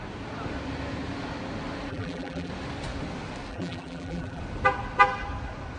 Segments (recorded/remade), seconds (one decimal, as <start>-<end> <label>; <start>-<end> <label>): 0.0-1.9 recorded; 1.9-2.5 remade; 2.5-3.5 recorded; 3.5-4.4 remade; 4.4-5.8 recorded